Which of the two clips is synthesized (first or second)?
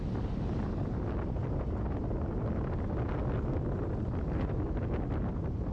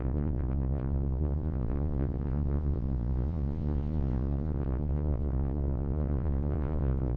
second